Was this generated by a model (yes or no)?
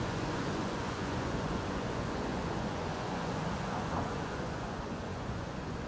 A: yes